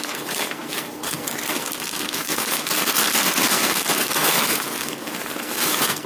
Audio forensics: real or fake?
fake